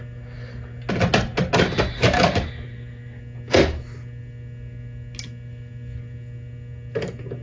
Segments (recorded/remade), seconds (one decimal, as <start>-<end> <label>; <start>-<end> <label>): 0.0-7.4 recorded